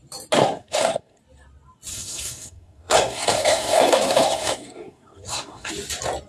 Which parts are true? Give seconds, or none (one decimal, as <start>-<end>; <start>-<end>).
0.0-0.4; 1.2-1.9; 5.7-6.3